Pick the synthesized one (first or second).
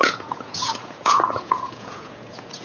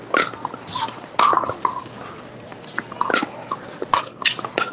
first